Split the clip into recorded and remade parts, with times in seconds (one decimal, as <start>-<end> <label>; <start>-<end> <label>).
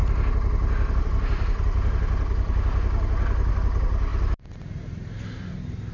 0.0-5.9 recorded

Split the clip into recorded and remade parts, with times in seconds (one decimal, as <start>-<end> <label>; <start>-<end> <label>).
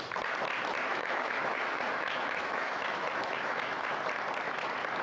0.0-0.9 recorded; 0.9-3.9 remade; 3.9-5.0 recorded